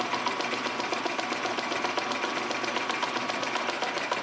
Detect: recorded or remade recorded